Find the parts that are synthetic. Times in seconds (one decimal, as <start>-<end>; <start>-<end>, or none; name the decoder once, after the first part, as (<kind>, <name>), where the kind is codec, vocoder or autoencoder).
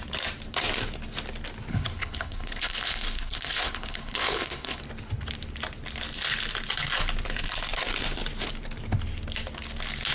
1.7-4.8 (codec, HILCodec)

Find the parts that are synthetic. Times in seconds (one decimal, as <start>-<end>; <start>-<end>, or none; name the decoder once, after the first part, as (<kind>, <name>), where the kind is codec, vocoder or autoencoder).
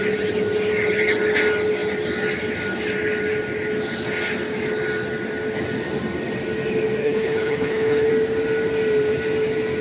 7.0-8.1 (codec, HILCodec)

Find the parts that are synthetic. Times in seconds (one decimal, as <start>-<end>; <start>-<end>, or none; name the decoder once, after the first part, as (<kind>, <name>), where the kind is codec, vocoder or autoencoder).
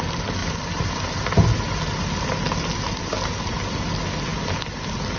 none